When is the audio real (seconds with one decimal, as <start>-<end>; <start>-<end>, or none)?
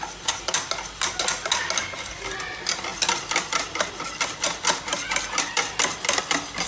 0.0-6.7